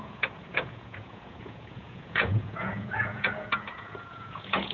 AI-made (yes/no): yes